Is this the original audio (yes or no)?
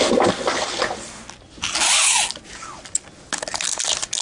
yes